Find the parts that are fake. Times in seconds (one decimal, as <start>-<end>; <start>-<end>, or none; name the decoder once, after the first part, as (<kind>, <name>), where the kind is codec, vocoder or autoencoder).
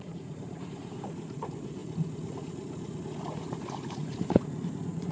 0.0-5.1 (vocoder, Vocos)